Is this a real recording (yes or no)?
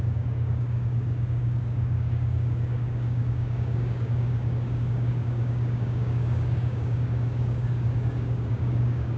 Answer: no